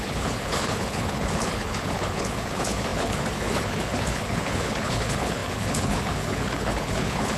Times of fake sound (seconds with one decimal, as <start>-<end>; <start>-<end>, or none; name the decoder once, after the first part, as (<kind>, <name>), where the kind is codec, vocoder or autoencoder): 0.0-7.4 (codec, HILCodec)